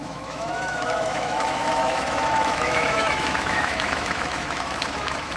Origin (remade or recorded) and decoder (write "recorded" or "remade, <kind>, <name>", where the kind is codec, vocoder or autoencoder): remade, autoencoder, DAC-VAE